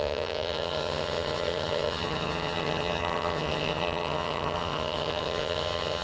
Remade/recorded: remade